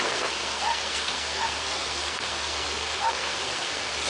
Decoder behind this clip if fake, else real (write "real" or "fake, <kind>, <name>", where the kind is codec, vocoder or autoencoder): fake, codec, SNAC